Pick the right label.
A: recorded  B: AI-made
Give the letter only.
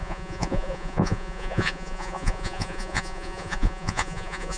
B